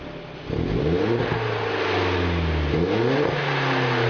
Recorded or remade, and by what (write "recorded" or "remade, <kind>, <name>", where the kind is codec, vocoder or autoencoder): recorded